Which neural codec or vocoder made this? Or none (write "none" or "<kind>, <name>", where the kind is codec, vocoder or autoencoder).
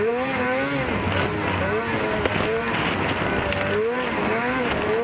none